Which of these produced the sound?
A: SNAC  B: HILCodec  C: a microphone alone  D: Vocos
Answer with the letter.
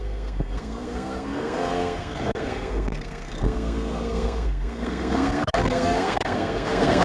A